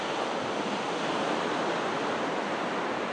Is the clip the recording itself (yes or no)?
yes